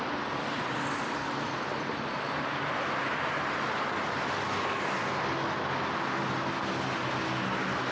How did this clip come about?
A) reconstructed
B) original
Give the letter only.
B